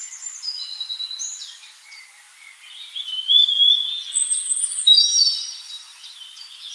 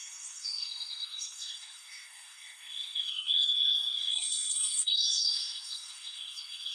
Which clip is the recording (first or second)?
first